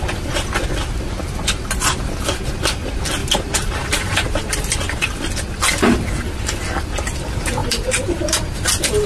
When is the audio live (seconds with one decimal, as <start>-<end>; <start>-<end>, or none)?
0.0-3.2; 5.3-7.6; 8.7-9.1